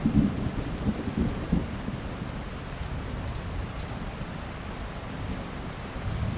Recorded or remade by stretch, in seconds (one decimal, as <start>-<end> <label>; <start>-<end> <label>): 0.0-6.4 remade